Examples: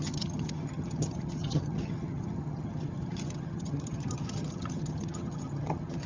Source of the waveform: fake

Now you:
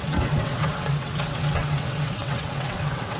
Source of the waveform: fake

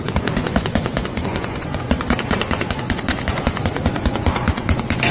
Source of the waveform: fake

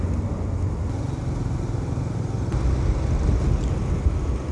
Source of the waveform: real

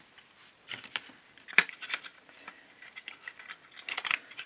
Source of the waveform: real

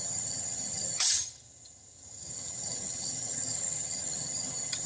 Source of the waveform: fake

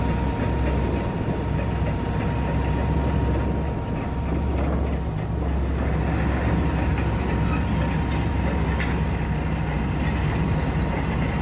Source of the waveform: real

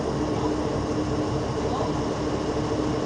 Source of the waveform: real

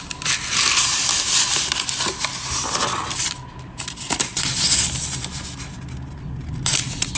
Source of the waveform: real